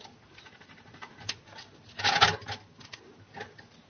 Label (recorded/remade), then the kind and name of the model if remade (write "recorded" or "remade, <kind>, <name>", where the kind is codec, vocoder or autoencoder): recorded